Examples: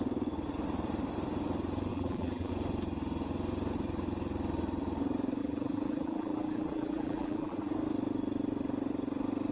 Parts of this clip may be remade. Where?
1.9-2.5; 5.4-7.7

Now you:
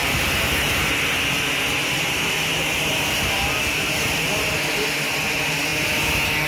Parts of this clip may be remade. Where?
none

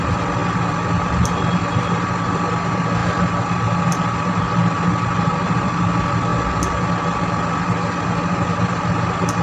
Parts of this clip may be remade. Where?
0.0-4.6; 5.2-6.3; 7.5-9.4

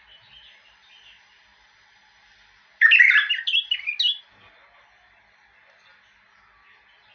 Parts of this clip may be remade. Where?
none

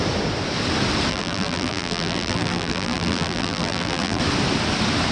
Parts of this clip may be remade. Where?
1.1-4.2